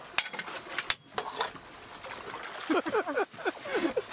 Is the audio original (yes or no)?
yes